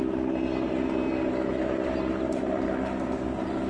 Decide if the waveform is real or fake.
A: real